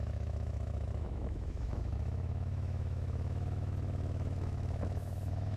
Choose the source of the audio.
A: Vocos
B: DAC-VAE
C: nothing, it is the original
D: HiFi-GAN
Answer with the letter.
B